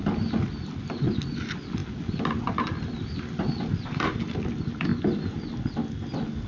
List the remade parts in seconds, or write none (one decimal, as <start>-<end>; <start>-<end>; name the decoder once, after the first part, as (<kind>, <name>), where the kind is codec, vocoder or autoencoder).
none